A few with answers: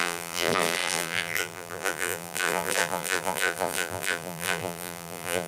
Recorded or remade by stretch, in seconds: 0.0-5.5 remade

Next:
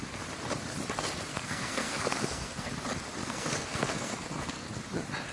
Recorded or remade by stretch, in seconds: 0.0-1.3 recorded; 1.3-2.7 remade; 2.7-3.2 recorded; 3.2-4.8 remade; 4.8-5.3 recorded

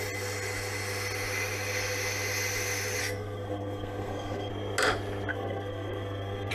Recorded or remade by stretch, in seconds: 0.0-3.0 recorded; 3.0-4.5 remade; 4.5-5.3 recorded; 5.3-6.5 remade

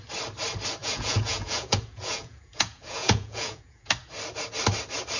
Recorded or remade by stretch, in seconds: 0.0-0.8 recorded; 0.8-3.9 remade; 3.9-5.2 recorded

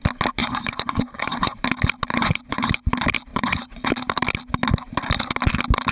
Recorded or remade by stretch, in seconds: 0.0-0.4 recorded; 0.4-1.6 remade; 1.6-2.1 recorded; 2.1-2.7 remade; 2.7-3.3 recorded; 3.3-3.9 remade; 3.9-5.9 recorded

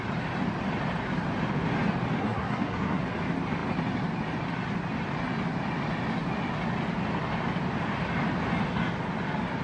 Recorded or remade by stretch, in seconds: 0.0-2.2 recorded; 2.2-3.0 remade; 3.0-9.6 recorded